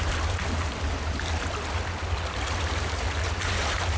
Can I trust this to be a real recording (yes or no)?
yes